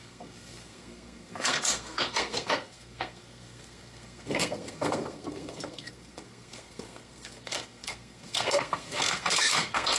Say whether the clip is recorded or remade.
remade